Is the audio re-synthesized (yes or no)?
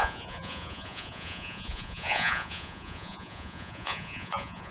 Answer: yes